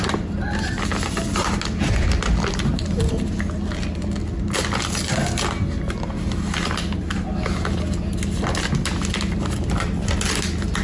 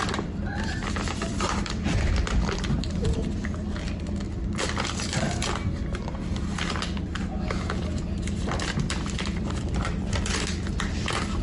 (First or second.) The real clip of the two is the first